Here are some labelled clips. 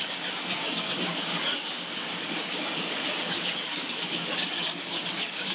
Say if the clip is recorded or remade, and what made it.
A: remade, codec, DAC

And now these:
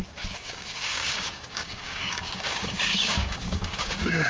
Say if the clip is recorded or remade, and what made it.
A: remade, codec, DAC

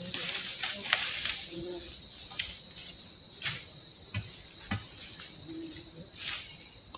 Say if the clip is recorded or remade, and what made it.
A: recorded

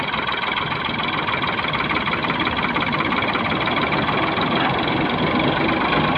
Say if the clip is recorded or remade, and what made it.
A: recorded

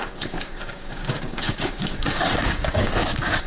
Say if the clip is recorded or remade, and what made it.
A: remade, codec, DAC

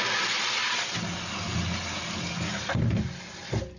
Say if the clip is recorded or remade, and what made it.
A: recorded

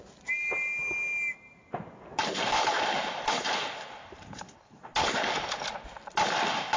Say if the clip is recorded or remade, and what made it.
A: recorded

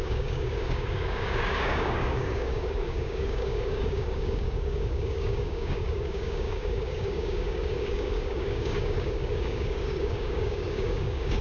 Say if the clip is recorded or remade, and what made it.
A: remade, codec, DAC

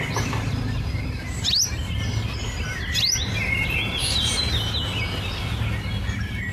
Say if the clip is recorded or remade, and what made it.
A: recorded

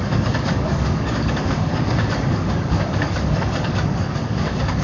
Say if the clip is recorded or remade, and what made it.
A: remade, codec, DAC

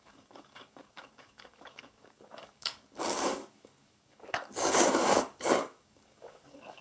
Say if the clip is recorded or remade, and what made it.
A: remade, codec, DAC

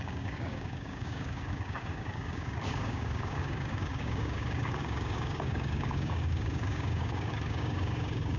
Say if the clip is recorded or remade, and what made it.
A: remade, codec, DAC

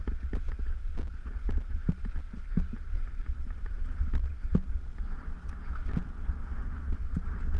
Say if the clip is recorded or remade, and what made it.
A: recorded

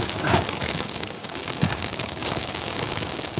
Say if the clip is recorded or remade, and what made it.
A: remade, codec, DAC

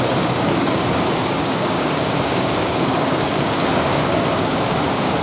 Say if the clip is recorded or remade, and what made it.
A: remade, codec, DAC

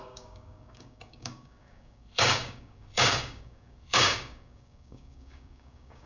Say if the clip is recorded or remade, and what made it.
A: remade, codec, DAC